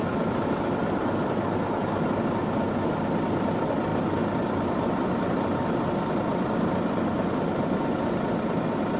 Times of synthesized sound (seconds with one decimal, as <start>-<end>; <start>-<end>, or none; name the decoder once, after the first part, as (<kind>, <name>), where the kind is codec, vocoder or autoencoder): none